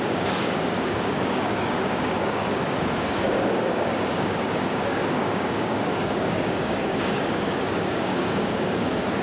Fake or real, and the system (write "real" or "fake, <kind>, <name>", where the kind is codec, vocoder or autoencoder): fake, codec, DAC